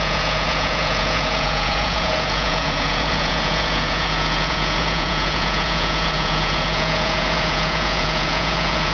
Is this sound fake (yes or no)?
yes